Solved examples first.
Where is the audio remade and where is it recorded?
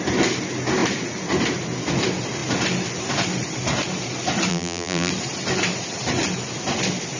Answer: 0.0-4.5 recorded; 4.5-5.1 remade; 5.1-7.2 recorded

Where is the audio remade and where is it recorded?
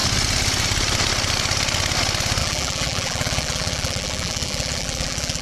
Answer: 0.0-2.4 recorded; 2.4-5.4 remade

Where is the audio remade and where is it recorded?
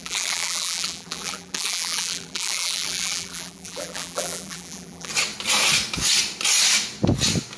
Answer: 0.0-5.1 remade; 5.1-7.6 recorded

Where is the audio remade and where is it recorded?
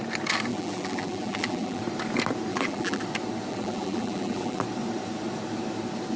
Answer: 0.0-0.5 recorded; 0.5-1.8 remade; 1.8-2.5 recorded; 2.5-3.0 remade; 3.0-3.5 recorded; 3.5-4.6 remade; 4.6-6.2 recorded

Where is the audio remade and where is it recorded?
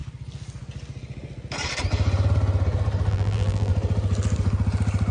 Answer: 0.0-3.1 recorded; 3.1-3.7 remade; 3.7-5.1 recorded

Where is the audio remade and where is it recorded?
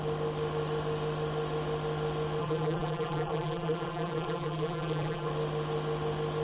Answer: 0.0-2.4 recorded; 2.4-5.3 remade; 5.3-6.4 recorded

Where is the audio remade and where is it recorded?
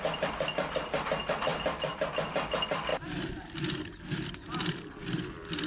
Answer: 0.0-1.5 recorded; 1.5-2.1 remade; 2.1-5.7 recorded